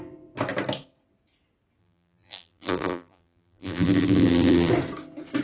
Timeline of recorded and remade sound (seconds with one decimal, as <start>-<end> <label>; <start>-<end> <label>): 0.0-1.8 recorded; 1.8-4.7 remade; 4.7-5.4 recorded